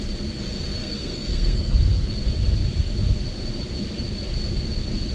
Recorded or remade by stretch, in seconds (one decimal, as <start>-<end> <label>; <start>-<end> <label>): 0.0-0.8 recorded; 0.8-2.1 remade; 2.1-5.1 recorded